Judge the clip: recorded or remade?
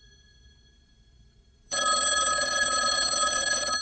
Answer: remade